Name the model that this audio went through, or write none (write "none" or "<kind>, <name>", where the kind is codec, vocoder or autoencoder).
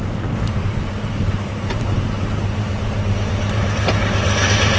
vocoder, BigVGAN v2